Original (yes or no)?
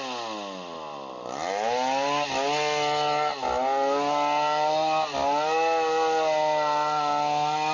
yes